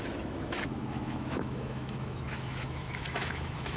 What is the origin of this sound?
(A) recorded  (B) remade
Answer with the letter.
B